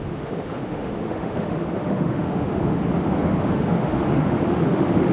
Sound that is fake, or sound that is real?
fake